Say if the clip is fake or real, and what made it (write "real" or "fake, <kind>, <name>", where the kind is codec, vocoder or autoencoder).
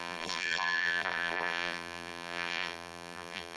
fake, vocoder, BigVGAN v2